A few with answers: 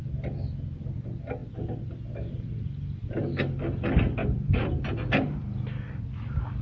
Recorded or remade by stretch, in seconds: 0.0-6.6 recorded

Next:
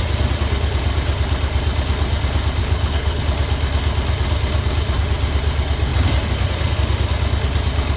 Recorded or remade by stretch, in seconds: 0.0-2.6 recorded; 2.6-3.2 remade; 3.2-8.0 recorded

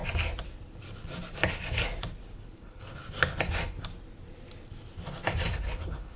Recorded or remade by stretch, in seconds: 0.0-2.6 recorded; 2.6-3.0 remade; 3.0-5.5 recorded; 5.5-6.2 remade

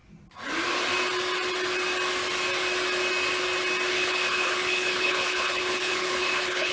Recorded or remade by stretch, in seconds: 0.0-3.9 recorded; 3.9-6.7 remade

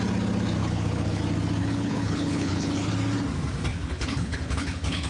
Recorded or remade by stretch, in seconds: 0.0-0.6 recorded; 0.6-1.2 remade; 1.2-1.6 recorded; 1.6-2.9 remade; 2.9-3.7 recorded; 3.7-5.1 remade

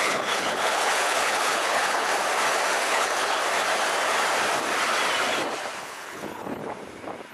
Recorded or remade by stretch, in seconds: 0.0-2.1 remade; 2.1-2.8 recorded; 2.8-3.4 remade; 3.4-5.8 recorded; 5.8-6.6 remade; 6.6-7.3 recorded

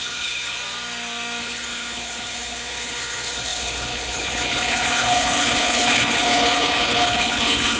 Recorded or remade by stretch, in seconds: 0.0-0.6 remade; 0.6-1.4 recorded; 1.4-7.8 remade

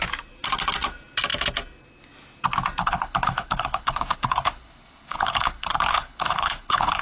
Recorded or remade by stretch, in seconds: 0.0-2.8 recorded; 2.8-7.0 remade